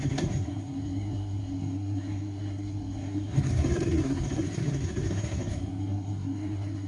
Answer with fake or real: fake